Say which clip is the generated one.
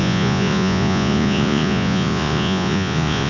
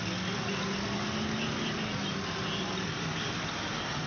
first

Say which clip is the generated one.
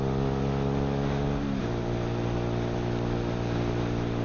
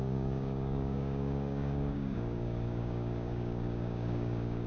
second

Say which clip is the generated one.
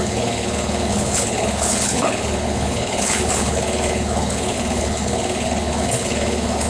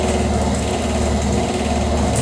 first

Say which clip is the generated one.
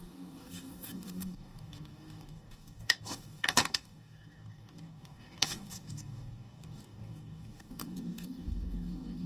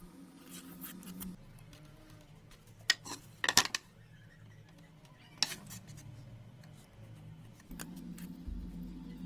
first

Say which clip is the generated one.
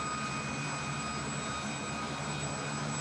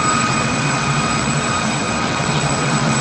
second